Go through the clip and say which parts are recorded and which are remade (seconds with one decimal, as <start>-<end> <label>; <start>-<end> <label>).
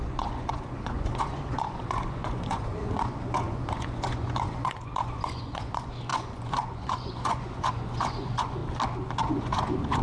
0.0-8.6 remade; 8.6-9.3 recorded; 9.3-10.0 remade